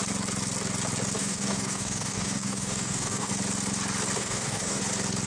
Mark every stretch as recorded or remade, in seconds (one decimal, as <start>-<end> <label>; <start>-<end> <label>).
0.0-1.2 recorded; 1.2-3.3 remade; 3.3-4.2 recorded; 4.2-4.8 remade; 4.8-5.3 recorded